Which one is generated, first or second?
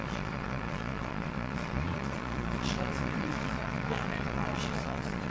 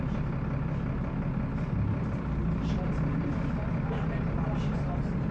first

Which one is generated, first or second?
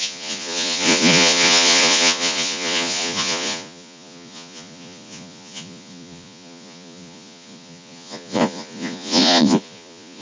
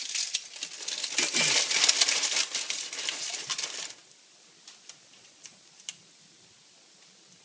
first